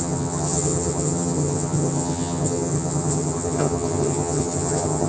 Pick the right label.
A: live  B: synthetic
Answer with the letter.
B